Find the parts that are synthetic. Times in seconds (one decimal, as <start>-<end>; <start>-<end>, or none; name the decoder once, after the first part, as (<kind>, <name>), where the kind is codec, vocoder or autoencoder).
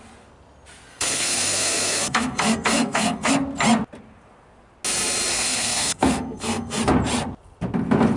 0.9-3.3 (codec, SNAC); 5.3-6.8